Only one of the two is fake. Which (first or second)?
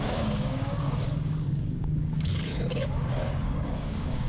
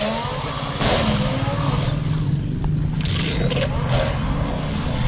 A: first